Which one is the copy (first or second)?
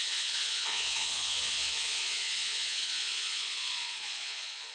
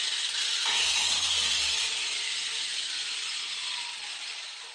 first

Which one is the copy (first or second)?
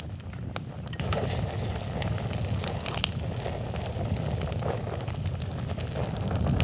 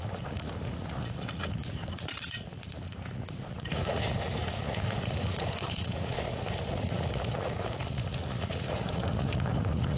second